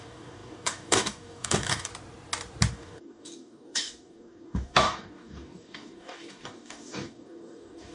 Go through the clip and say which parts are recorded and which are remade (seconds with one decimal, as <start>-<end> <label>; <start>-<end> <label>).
0.0-1.9 remade; 1.9-2.7 recorded; 2.7-7.9 remade